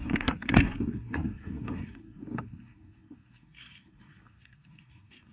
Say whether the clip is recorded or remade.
remade